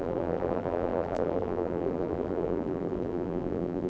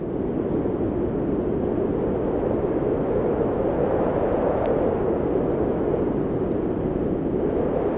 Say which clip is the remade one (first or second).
first